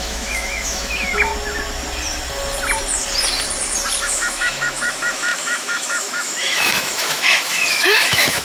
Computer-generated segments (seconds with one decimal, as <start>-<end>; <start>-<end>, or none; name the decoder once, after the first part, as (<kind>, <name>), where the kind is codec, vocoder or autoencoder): 0.0-1.3 (autoencoder, DAC-VAE); 4.0-8.4